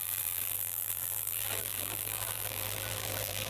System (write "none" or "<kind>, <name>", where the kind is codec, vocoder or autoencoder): vocoder, BigVGAN v2